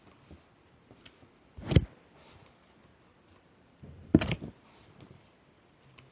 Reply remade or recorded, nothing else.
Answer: recorded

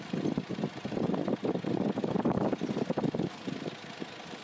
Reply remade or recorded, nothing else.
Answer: recorded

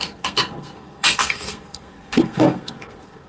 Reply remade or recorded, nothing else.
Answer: remade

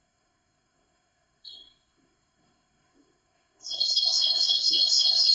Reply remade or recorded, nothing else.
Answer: remade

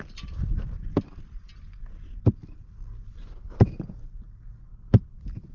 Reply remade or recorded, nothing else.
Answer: recorded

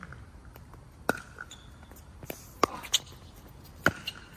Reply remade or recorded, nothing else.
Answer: recorded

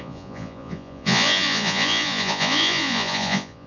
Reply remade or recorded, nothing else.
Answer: remade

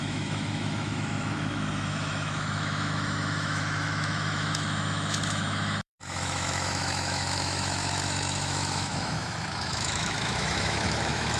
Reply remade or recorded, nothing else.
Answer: remade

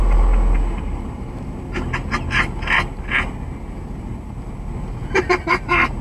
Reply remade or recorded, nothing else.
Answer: recorded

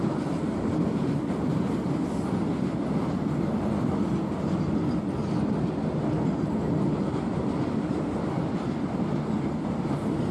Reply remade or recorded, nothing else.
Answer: recorded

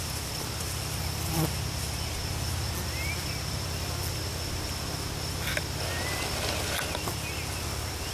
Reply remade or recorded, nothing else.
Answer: recorded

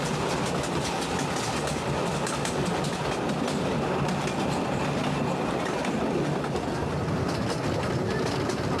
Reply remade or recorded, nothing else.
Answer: recorded